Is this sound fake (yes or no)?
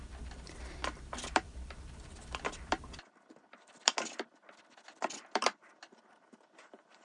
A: yes